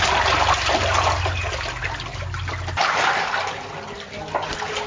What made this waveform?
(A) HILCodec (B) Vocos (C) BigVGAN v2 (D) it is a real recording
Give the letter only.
D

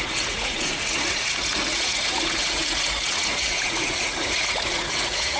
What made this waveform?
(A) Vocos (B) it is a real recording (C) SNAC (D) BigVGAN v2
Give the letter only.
A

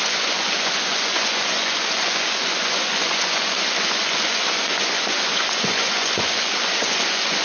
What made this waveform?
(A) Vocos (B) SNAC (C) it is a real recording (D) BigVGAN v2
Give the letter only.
A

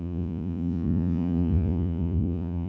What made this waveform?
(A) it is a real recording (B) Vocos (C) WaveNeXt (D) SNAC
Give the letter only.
B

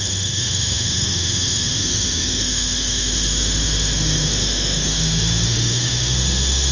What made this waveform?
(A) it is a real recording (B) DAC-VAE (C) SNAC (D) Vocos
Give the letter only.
B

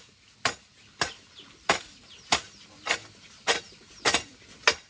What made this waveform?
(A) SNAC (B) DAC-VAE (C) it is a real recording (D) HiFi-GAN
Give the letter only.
C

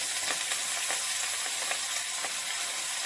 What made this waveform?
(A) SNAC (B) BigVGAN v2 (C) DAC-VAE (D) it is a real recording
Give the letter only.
D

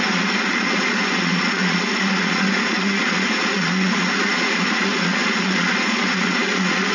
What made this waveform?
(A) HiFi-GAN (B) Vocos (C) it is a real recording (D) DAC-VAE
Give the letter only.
B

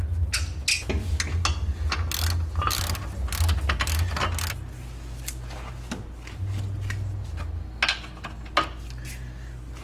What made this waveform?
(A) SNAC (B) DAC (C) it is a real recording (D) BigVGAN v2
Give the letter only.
C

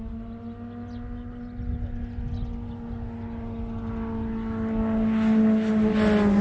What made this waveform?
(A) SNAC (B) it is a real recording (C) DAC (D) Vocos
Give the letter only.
B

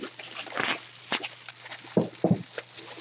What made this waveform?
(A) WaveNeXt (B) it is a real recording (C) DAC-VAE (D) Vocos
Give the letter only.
B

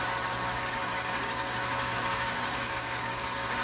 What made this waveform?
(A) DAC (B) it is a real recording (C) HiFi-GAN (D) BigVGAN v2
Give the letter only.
A